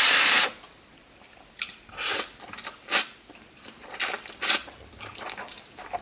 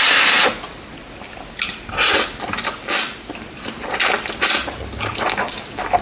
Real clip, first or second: second